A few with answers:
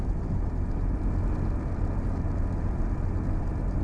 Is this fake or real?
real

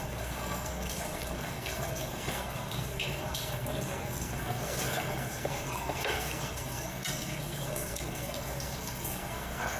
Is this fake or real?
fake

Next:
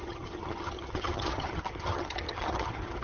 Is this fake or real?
fake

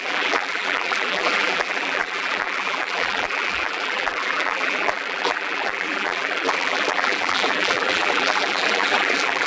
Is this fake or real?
fake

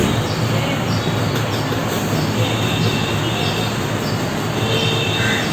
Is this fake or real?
real